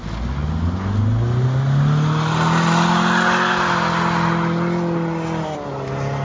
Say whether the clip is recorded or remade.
recorded